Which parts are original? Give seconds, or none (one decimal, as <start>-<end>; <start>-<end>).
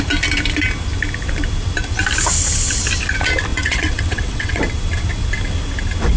0.0-3.5; 4.6-6.2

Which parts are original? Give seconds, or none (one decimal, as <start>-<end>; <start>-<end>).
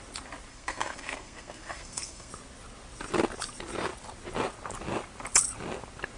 0.0-0.5; 2.3-6.2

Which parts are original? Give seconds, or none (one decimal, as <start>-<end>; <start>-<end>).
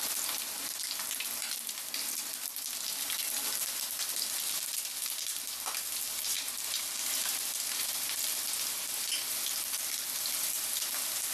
0.0-7.2; 8.2-11.3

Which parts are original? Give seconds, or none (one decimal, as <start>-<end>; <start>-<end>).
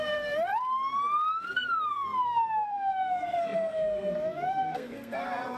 0.5-1.4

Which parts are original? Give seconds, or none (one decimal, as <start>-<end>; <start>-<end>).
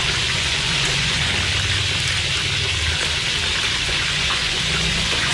1.3-3.7